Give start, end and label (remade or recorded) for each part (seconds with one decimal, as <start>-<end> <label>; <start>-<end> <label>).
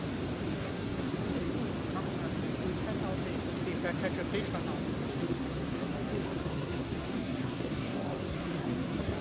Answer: 0.0-0.5 recorded; 0.5-1.5 remade; 1.5-5.1 recorded; 5.1-9.2 remade